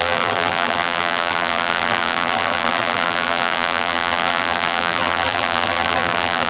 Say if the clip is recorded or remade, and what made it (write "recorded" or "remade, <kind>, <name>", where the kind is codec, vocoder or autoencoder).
remade, vocoder, BigVGAN v2